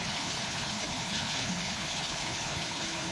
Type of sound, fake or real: fake